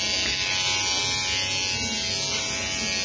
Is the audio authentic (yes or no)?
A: yes